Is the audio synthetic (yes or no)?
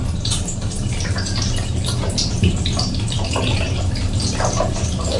yes